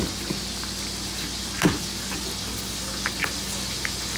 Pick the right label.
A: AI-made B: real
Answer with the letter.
B